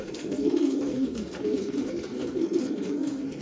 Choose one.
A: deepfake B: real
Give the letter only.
A